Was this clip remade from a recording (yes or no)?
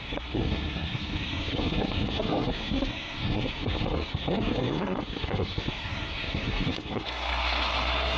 yes